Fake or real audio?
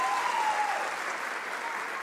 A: real